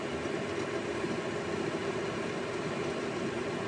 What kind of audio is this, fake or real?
real